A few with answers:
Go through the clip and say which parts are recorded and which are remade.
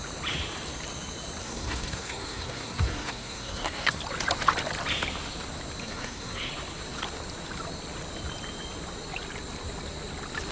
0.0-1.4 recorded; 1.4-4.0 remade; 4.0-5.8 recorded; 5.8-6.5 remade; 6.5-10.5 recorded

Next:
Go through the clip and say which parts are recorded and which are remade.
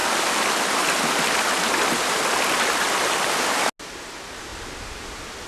0.0-5.5 recorded